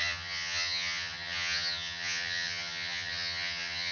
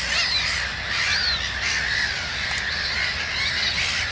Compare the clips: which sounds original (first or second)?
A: second